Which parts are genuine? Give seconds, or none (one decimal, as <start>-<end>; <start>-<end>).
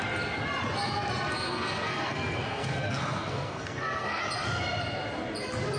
0.0-1.3; 4.2-5.8